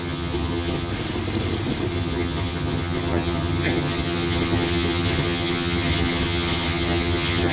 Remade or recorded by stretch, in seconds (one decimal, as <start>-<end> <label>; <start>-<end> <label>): 0.0-0.9 remade; 0.9-1.9 recorded; 1.9-7.5 remade